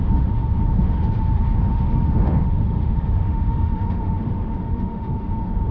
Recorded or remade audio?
remade